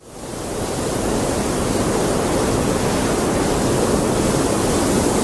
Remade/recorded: recorded